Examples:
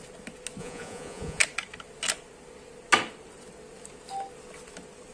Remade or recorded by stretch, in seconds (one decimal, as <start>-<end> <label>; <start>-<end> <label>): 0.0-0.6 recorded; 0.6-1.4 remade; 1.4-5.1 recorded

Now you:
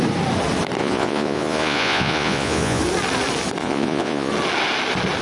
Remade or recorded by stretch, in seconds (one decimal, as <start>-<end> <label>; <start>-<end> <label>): 0.0-0.8 recorded; 0.8-2.8 remade; 2.8-3.6 recorded; 3.6-4.3 remade; 4.3-5.2 recorded

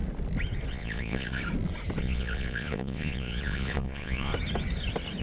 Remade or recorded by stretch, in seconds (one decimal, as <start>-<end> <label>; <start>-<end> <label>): 0.0-0.7 recorded; 0.7-1.4 remade; 1.4-2.0 recorded; 2.0-4.3 remade; 4.3-5.2 recorded

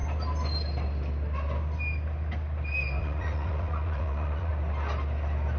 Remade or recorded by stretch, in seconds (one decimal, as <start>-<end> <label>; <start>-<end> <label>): 0.0-3.0 recorded; 3.0-4.5 remade; 4.5-5.6 recorded